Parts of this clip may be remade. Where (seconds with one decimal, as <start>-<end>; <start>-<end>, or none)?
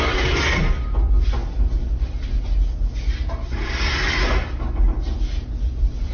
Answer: none